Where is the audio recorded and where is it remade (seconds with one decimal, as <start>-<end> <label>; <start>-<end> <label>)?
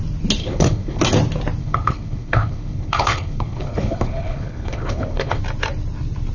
0.0-0.4 recorded; 0.4-1.0 remade; 1.0-1.6 recorded; 1.6-5.4 remade; 5.4-6.3 recorded